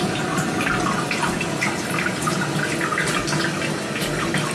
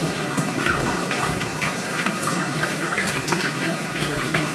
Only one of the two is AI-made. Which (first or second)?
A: second